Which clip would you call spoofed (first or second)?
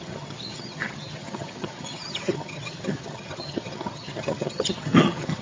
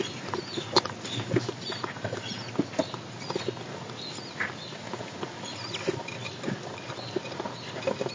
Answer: first